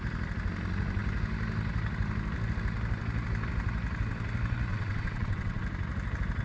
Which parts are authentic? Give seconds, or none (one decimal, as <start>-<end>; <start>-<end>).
0.0-4.7; 5.6-6.4